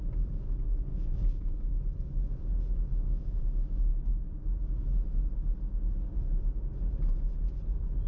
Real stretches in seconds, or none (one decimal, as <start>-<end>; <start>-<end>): 0.0-0.9; 1.7-2.9; 3.4-8.1